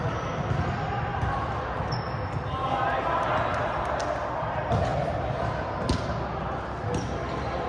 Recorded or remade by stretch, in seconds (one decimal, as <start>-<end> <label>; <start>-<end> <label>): 0.0-1.1 recorded; 1.1-1.6 remade; 1.6-3.6 recorded; 3.6-4.2 remade; 4.2-4.9 recorded; 4.9-5.7 remade; 5.7-7.7 recorded